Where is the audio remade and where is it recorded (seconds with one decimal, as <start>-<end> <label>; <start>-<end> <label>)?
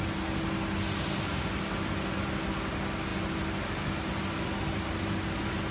0.0-5.7 recorded